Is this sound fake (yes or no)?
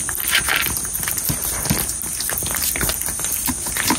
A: no